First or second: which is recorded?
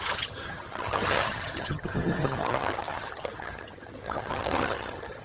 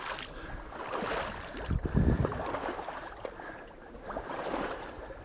second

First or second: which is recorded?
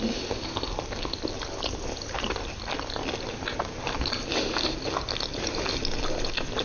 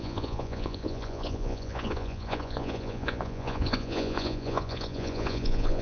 first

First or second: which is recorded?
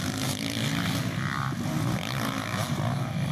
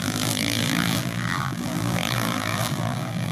first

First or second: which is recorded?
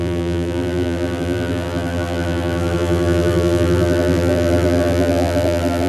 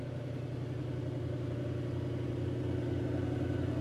second